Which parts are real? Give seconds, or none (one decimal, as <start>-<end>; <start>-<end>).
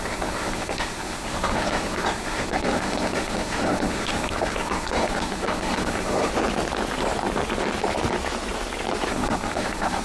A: 6.3-9.1